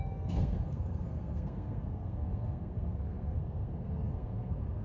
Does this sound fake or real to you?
fake